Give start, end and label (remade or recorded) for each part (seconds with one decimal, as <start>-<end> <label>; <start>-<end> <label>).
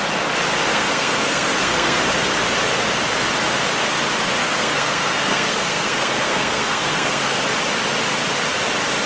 0.0-0.7 recorded; 0.7-2.0 remade; 2.0-4.4 recorded; 4.4-7.4 remade; 7.4-9.1 recorded